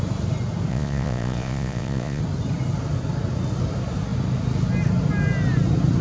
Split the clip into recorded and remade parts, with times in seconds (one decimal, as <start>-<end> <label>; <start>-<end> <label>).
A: 0.0-0.7 recorded; 0.7-2.2 remade; 2.2-6.0 recorded

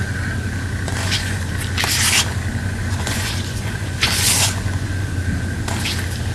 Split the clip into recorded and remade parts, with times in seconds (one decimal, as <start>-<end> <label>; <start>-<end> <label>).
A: 0.0-1.0 recorded; 1.0-1.5 remade; 1.5-2.6 recorded; 2.6-5.1 remade; 5.1-6.3 recorded

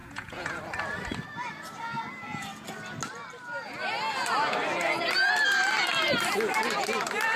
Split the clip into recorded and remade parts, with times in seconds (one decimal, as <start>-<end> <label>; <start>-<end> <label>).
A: 0.0-0.6 remade; 0.6-7.4 recorded

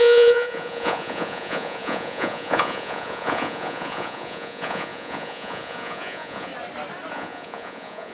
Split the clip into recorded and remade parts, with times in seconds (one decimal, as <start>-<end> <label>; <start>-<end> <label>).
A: 0.0-6.5 remade; 6.5-7.1 recorded; 7.1-8.1 remade

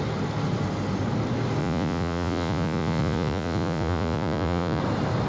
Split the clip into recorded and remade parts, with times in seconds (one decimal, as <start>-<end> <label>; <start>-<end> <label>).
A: 0.0-1.6 recorded; 1.6-4.8 remade; 4.8-5.3 recorded